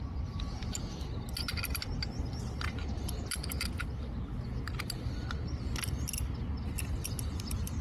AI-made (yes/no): no